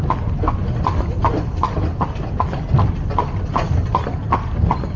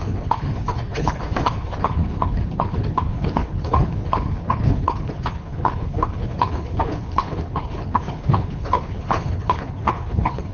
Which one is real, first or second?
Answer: first